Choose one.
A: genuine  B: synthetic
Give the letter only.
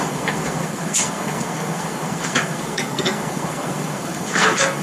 B